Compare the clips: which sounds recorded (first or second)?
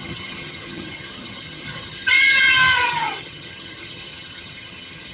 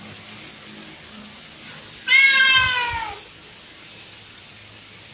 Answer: second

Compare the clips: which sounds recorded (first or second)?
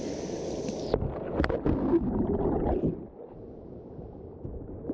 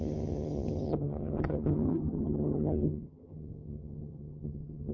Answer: first